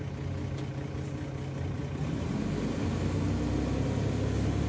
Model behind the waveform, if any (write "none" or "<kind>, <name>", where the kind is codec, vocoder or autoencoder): none